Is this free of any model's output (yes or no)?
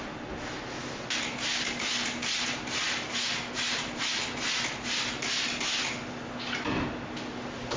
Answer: yes